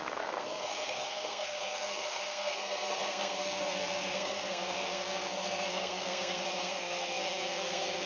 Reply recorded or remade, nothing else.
remade